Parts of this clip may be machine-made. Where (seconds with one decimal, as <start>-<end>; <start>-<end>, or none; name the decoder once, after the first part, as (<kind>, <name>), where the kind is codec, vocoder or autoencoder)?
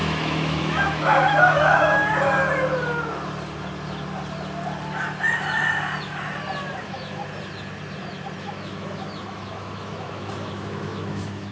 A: 0.0-2.0 (autoencoder, DAC-VAE); 6.8-7.2; 8.4-11.5